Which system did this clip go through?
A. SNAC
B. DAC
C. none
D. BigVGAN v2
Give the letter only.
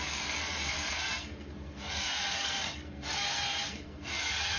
A